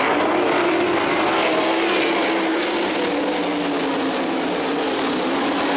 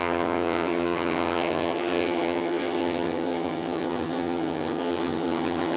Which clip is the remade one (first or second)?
second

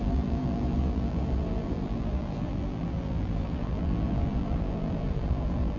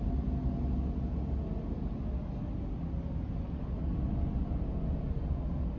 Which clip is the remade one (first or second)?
first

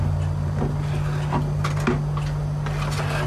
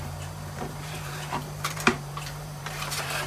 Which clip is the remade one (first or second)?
second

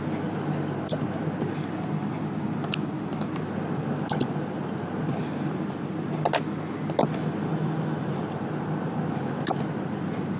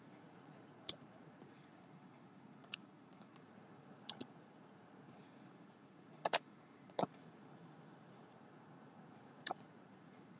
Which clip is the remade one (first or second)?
second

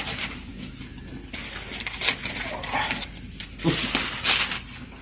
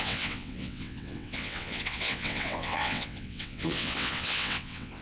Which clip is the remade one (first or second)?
second